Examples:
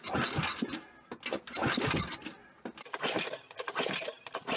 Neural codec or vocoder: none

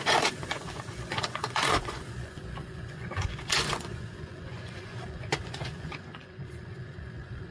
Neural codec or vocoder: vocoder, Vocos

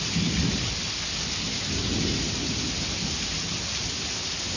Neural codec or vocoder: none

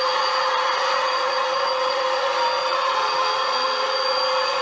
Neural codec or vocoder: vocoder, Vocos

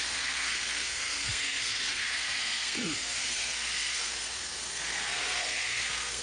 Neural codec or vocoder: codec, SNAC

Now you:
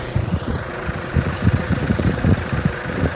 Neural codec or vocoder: vocoder, Vocos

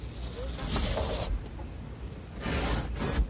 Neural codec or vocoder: none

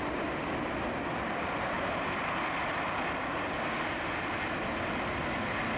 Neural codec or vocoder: none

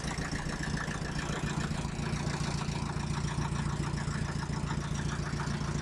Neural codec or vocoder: none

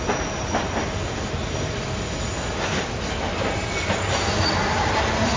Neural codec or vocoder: none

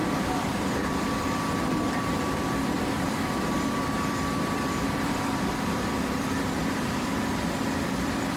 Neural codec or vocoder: vocoder, BigVGAN v2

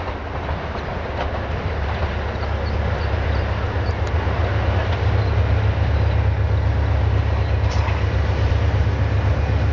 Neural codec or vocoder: none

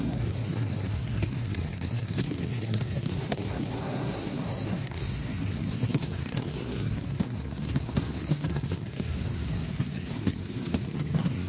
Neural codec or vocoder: codec, SNAC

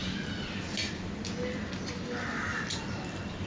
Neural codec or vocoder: none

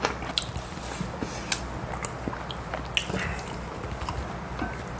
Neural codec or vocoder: none